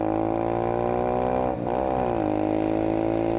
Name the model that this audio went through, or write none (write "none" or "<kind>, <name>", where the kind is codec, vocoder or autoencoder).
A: none